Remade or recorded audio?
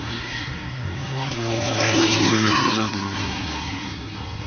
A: remade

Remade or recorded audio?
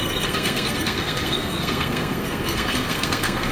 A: remade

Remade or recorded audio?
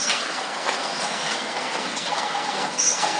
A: remade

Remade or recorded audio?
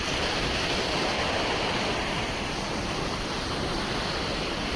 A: recorded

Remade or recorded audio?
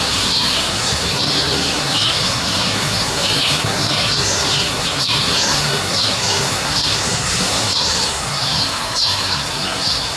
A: remade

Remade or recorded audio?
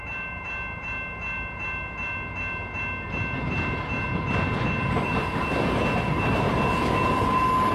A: recorded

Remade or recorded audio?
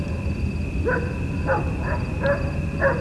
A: recorded